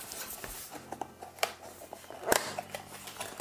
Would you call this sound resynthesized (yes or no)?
no